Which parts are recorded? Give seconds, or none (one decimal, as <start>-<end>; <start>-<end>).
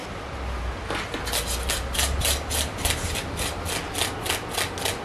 0.0-5.0